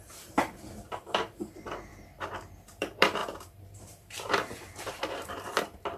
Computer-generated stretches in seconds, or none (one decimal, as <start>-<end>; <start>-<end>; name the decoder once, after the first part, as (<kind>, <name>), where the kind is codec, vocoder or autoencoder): 0.0-1.9 (vocoder, BigVGAN v2); 2.8-6.0